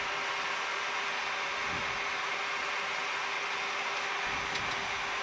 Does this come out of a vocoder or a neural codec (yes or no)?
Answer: no